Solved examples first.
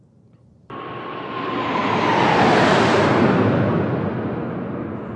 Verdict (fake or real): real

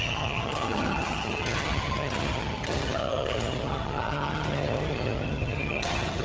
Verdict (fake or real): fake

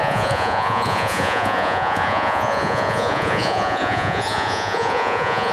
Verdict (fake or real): fake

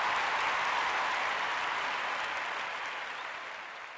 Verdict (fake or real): real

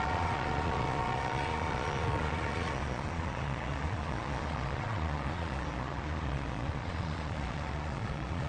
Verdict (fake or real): fake